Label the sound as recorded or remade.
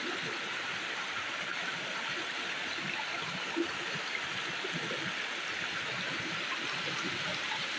recorded